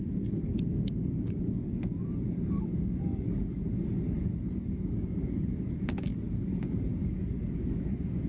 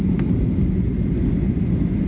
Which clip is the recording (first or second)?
second